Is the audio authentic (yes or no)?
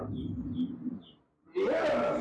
yes